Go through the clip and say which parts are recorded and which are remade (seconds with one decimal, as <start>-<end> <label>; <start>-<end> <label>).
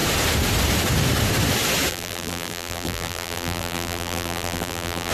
0.0-1.9 recorded; 1.9-5.1 remade